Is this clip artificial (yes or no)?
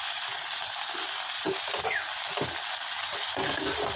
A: no